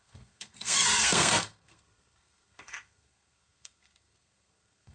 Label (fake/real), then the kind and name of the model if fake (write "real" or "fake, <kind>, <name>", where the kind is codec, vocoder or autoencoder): fake, codec, SNAC